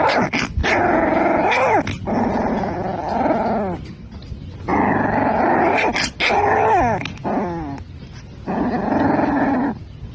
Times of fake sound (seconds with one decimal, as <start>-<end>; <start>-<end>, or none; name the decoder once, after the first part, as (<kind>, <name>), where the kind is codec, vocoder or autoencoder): none